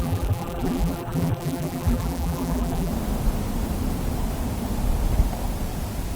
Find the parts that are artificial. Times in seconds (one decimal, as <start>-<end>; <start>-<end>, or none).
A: 0.0-2.9